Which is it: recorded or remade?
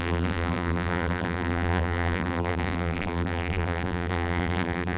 remade